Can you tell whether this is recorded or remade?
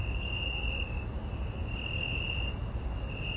recorded